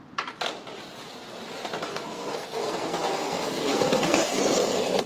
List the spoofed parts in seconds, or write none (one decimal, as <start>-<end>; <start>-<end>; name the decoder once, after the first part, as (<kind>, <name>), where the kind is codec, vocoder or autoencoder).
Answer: 1.9-5.1 (codec, SNAC)